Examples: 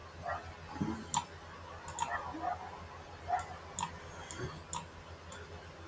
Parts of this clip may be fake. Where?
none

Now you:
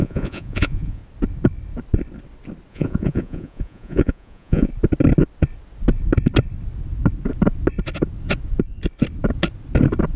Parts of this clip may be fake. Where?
0.0-1.0; 2.7-4.7

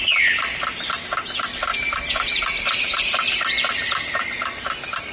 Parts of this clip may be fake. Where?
0.0-1.7; 3.1-5.1